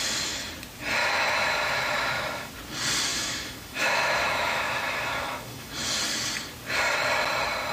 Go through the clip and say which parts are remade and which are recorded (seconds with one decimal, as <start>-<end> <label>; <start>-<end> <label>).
0.0-1.0 recorded; 1.0-2.5 remade; 2.5-3.1 recorded; 3.1-6.0 remade; 6.0-7.7 recorded